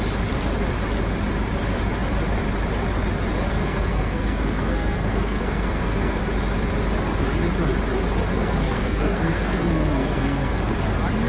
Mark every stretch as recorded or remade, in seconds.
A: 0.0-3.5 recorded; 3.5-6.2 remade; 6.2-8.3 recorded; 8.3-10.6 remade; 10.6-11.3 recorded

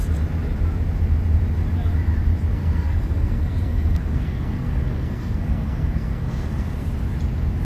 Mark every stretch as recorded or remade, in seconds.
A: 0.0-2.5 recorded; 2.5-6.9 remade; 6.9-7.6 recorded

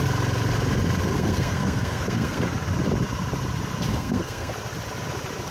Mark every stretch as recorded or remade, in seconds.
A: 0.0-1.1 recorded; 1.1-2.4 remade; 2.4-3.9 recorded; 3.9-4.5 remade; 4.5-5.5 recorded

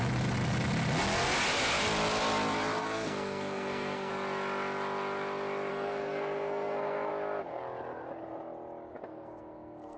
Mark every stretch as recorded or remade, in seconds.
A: 0.0-2.8 recorded; 2.8-4.1 remade; 4.1-5.7 recorded; 5.7-7.1 remade; 7.1-9.1 recorded; 9.1-10.0 remade

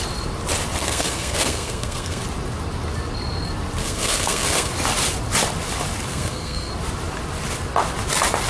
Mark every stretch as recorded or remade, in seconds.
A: 0.0-0.8 recorded; 0.8-2.2 remade; 2.2-3.8 recorded; 3.8-4.7 remade; 4.7-6.1 recorded; 6.1-6.7 remade; 6.7-8.5 recorded

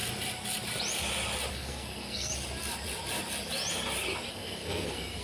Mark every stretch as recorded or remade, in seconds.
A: 0.0-1.5 recorded; 1.5-2.3 remade; 2.3-4.3 recorded; 4.3-5.2 remade

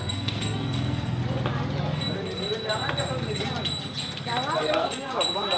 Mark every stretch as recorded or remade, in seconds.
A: 0.0-1.2 remade; 1.2-4.6 recorded; 4.6-5.1 remade; 5.1-5.6 recorded

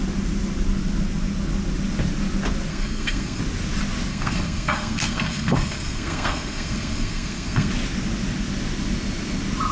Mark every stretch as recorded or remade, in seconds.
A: 0.0-2.7 recorded; 2.7-3.4 remade; 3.4-4.1 recorded; 4.1-7.7 remade; 7.7-9.7 recorded